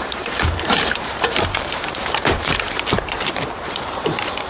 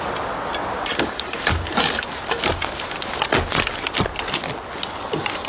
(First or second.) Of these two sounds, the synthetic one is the first